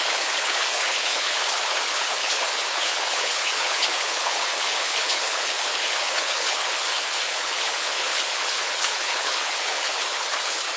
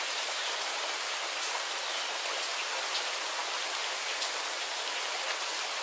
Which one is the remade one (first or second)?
first